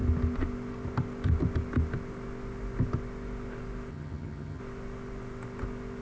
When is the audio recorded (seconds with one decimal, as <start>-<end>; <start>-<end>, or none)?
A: 0.0-3.9; 4.6-6.0